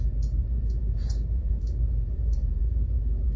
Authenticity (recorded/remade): remade